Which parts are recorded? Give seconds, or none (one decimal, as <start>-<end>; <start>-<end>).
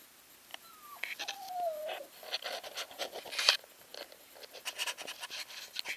0.0-6.0